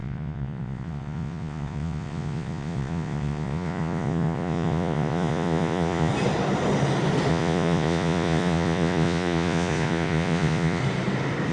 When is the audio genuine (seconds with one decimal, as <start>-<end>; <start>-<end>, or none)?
6.1-7.3; 10.8-11.5